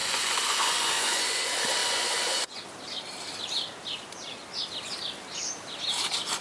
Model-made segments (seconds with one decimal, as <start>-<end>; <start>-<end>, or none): 0.0-1.4; 1.8-2.6